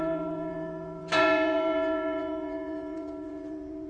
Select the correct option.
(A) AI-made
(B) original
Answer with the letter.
A